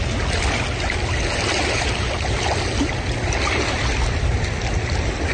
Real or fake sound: real